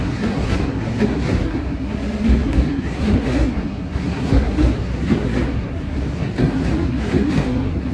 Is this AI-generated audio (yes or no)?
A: yes